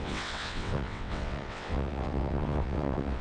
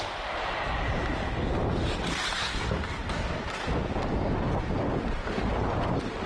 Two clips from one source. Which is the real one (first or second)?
second